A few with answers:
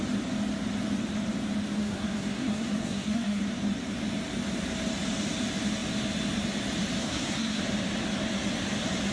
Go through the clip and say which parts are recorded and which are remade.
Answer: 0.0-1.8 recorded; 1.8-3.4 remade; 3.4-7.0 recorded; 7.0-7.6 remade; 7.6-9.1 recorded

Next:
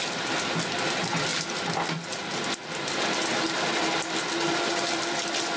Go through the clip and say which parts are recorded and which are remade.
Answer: 0.0-5.6 recorded

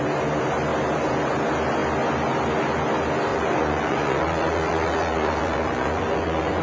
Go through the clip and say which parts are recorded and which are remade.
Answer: 0.0-3.3 recorded; 3.3-6.6 remade

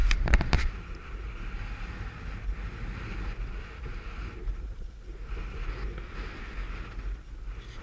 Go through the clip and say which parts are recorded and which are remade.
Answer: 0.0-0.7 remade; 0.7-3.9 recorded; 3.9-4.9 remade; 4.9-7.8 recorded